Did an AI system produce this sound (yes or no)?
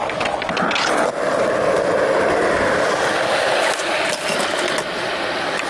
no